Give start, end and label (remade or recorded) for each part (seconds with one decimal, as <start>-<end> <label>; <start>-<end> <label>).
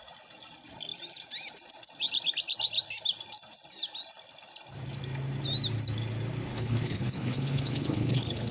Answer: 0.0-6.5 recorded; 6.5-8.5 remade